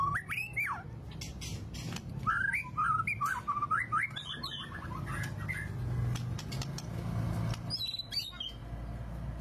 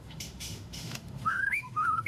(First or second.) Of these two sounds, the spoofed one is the second